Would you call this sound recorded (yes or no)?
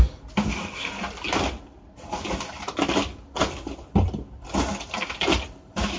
yes